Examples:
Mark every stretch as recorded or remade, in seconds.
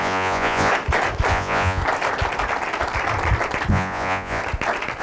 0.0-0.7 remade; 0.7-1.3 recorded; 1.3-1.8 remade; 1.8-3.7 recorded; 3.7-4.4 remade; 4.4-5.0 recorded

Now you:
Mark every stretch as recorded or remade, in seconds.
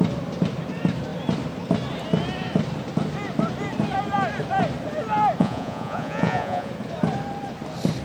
0.0-5.4 recorded; 5.4-6.7 remade; 6.7-8.0 recorded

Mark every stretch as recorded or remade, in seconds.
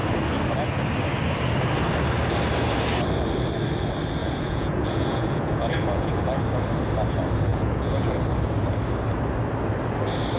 0.0-4.2 recorded; 4.2-6.3 remade; 6.3-7.5 recorded; 7.5-8.1 remade; 8.1-10.4 recorded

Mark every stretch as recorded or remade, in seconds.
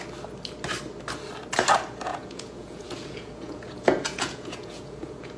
0.0-2.1 recorded; 2.1-5.4 remade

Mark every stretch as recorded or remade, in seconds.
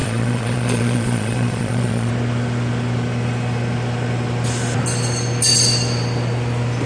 0.0-2.1 remade; 2.1-6.9 recorded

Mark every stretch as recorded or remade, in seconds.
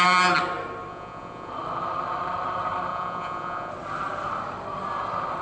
0.0-0.9 recorded; 0.9-1.5 remade; 1.5-2.9 recorded; 2.9-3.7 remade; 3.7-5.4 recorded